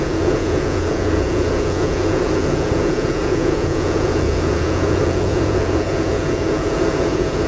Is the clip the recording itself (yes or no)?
no